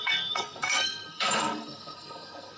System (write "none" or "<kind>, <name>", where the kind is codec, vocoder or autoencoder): codec, SNAC